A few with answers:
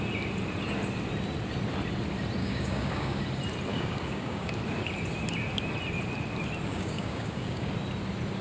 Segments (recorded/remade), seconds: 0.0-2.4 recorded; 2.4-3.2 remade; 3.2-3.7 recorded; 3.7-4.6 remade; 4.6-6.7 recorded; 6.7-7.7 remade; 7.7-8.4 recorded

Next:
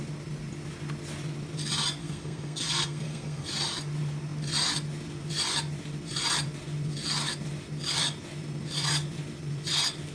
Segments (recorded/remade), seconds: 0.0-2.0 recorded; 2.0-3.5 remade; 3.5-10.1 recorded

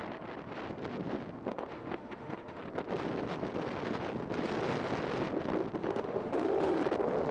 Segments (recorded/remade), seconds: 0.0-1.5 recorded; 1.5-2.6 remade; 2.6-5.8 recorded; 5.8-6.8 remade; 6.8-7.3 recorded

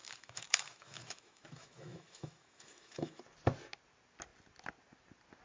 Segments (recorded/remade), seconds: 0.0-3.2 remade; 3.2-5.4 recorded